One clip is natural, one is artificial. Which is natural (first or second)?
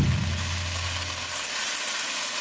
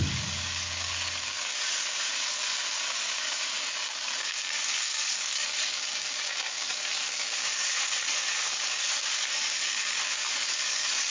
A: first